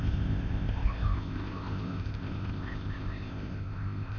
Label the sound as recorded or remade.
remade